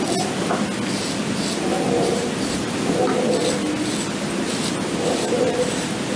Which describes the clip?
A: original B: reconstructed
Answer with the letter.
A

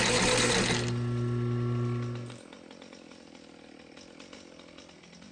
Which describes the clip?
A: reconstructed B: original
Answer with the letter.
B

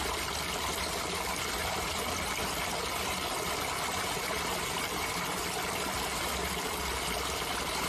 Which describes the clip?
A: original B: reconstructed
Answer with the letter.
A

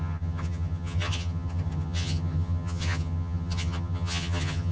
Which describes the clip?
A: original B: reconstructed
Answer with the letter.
B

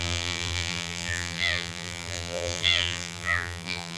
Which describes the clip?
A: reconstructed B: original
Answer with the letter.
A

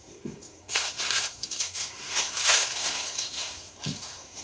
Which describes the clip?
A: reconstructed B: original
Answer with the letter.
A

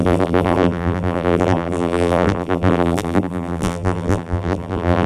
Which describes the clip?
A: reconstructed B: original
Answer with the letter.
A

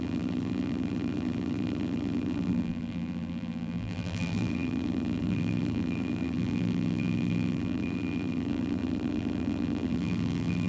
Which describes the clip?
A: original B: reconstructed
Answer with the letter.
B